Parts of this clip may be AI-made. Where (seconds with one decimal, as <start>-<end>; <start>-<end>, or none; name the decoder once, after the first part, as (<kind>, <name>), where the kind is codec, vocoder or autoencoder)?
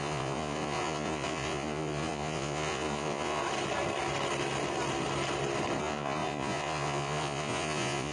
0.0-3.4 (vocoder, Vocos); 5.8-8.1